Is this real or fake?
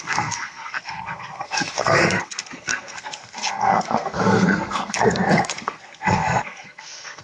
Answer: fake